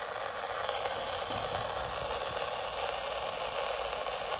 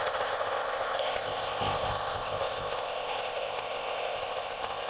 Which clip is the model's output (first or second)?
second